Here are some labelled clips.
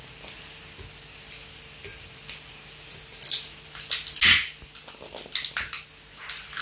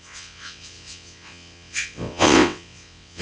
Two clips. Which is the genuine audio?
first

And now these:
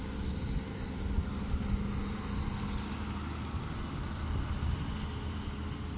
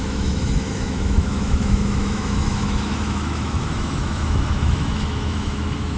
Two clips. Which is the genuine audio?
first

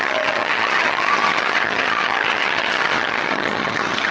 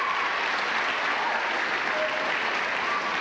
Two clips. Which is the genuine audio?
second